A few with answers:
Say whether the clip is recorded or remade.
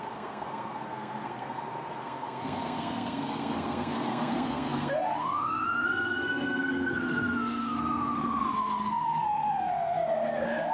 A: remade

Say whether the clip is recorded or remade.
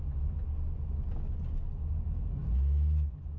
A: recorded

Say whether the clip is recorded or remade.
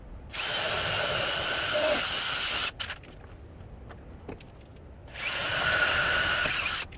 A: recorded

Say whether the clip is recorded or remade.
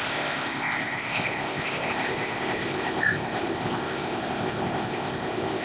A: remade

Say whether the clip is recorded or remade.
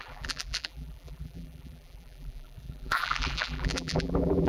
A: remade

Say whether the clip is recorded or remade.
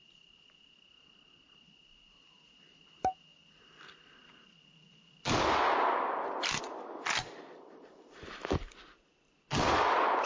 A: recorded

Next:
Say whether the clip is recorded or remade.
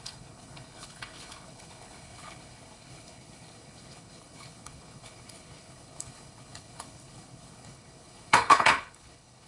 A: remade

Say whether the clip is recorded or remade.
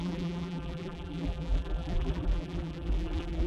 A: remade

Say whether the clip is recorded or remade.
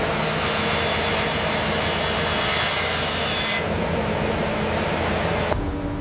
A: recorded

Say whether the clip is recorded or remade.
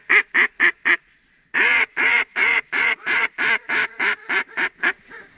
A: remade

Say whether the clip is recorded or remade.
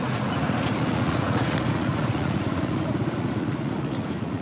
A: remade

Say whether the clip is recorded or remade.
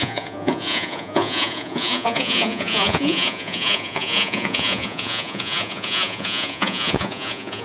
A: remade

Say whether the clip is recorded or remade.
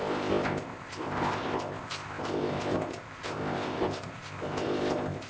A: remade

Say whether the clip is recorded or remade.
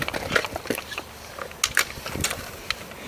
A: recorded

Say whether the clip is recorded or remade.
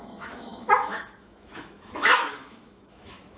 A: remade